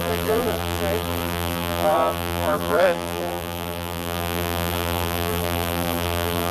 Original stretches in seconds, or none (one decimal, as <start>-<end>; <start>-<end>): none